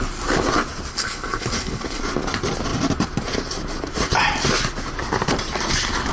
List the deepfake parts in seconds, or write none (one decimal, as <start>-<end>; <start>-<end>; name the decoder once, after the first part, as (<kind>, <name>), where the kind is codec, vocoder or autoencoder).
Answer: 0.9-2.0 (codec, HILCodec)